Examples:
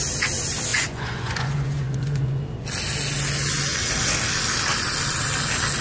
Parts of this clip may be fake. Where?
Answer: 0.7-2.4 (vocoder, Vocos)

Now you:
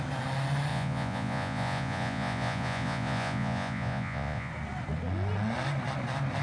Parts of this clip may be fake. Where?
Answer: 0.7-4.5 (vocoder, Vocos)

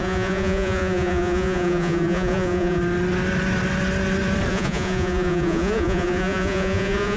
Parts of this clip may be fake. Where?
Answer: 0.0-2.8 (vocoder, Vocos); 4.5-7.2

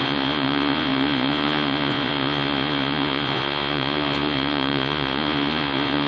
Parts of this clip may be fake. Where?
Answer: 0.0-6.1 (vocoder, Vocos)

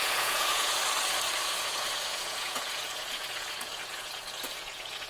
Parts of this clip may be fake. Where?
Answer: 0.0-0.8 (vocoder, Vocos); 1.5-5.1